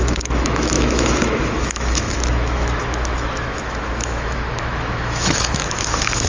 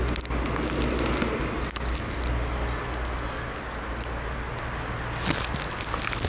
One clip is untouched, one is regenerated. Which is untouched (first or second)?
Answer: second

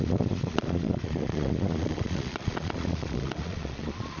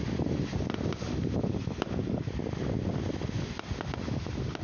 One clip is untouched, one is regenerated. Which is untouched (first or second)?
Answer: second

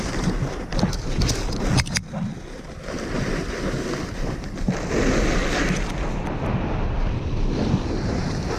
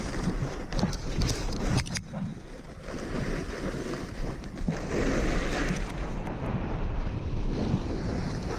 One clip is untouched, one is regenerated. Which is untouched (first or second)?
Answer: first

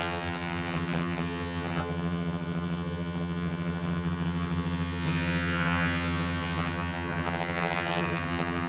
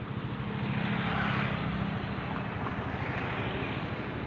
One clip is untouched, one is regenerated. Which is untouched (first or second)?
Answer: second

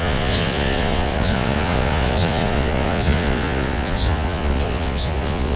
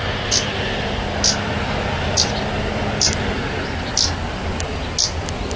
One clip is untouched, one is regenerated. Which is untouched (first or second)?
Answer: second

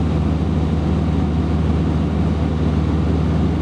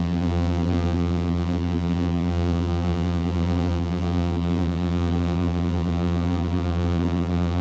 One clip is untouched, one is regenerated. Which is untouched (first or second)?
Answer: first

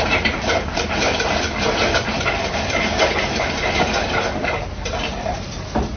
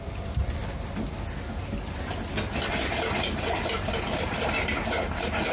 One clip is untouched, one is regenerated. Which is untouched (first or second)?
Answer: second